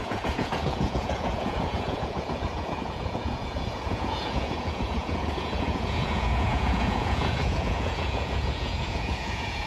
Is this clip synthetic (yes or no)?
yes